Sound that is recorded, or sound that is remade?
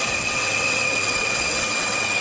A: remade